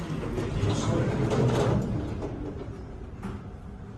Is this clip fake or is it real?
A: real